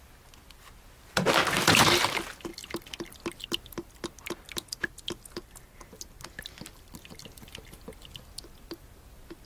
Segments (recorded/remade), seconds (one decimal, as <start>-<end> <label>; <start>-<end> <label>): 0.0-9.5 recorded